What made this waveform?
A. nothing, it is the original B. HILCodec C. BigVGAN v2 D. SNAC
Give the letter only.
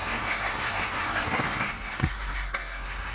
D